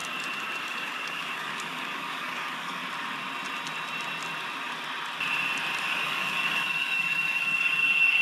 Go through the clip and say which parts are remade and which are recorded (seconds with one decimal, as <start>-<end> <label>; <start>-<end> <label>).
0.0-0.6 recorded; 0.6-2.8 remade; 2.8-5.8 recorded; 5.8-8.2 remade